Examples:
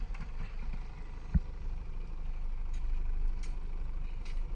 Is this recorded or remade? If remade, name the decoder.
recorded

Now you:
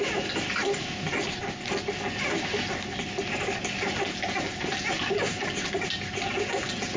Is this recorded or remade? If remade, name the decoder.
recorded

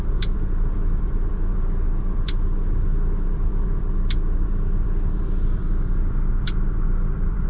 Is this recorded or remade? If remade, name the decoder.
remade, vocoder, BigVGAN v2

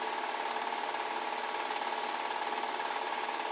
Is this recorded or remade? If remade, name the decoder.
recorded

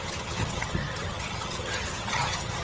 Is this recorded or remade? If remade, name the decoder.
remade, vocoder, HiFi-GAN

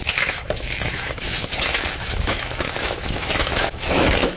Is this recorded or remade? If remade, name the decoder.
remade, autoencoder, DAC-VAE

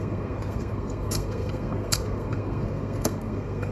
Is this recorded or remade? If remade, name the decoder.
remade, codec, SNAC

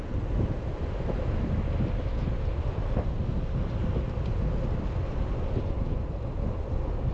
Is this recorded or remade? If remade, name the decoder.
recorded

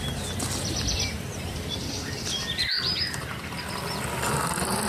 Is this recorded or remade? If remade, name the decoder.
recorded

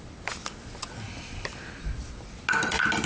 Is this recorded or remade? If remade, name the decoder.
recorded